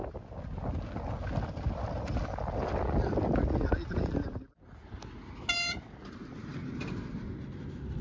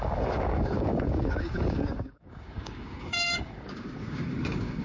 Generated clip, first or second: second